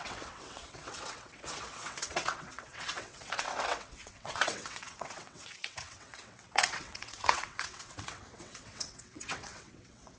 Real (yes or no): no